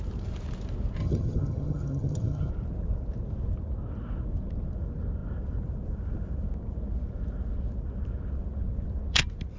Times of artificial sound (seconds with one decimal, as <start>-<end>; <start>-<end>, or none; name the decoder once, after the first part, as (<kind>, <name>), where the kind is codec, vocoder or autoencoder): 1.0-2.5 (vocoder, HiFi-GAN)